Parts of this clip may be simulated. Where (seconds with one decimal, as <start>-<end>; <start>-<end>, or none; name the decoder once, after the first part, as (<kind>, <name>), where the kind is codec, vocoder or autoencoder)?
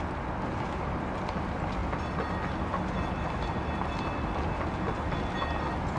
none